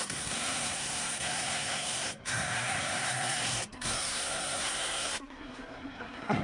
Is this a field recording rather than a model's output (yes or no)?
no